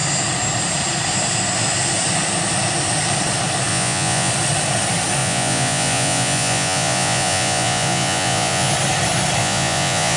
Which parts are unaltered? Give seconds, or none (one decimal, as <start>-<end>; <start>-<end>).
0.0-3.7; 4.3-5.2; 8.7-9.4